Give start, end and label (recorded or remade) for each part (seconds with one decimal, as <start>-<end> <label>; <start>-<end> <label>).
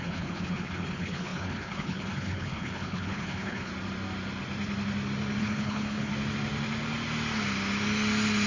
0.0-3.7 remade; 3.7-5.4 recorded; 5.4-6.1 remade; 6.1-8.5 recorded